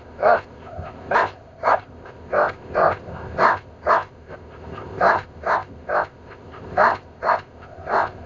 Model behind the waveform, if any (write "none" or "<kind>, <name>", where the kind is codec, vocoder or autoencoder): codec, ZipCodec